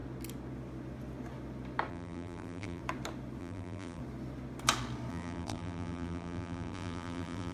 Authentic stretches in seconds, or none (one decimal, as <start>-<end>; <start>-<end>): 0.0-1.9; 2.8-3.4; 4.0-5.1